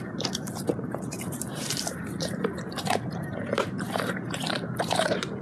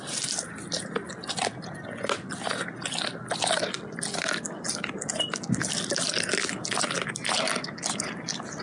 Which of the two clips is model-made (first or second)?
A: first